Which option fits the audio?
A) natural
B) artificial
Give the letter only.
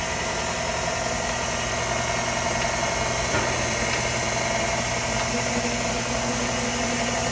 A